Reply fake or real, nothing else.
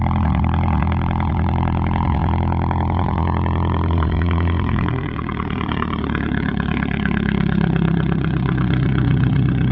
fake